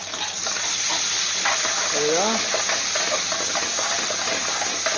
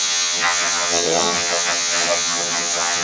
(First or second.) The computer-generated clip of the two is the second